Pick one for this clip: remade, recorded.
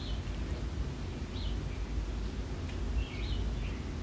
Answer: recorded